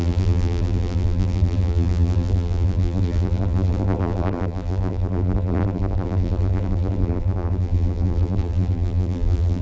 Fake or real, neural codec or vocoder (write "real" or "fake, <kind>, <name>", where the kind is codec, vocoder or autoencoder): fake, vocoder, BigVGAN v2